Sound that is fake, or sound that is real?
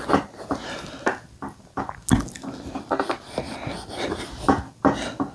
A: real